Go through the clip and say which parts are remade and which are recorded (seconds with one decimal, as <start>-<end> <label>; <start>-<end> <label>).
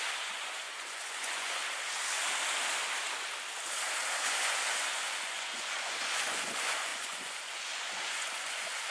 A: 0.0-1.6 remade; 1.6-4.1 recorded; 4.1-8.9 remade